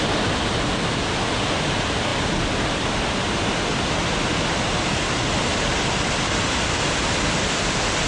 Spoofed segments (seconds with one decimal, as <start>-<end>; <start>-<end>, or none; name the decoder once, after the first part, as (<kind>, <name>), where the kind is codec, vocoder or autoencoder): none